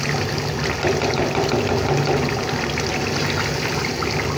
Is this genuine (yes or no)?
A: yes